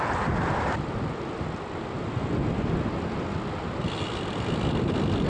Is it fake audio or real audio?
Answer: real